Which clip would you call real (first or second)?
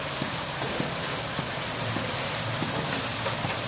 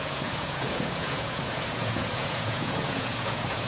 first